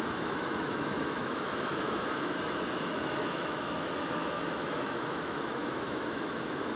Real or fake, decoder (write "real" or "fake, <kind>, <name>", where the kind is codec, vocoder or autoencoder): fake, autoencoder, DAC-VAE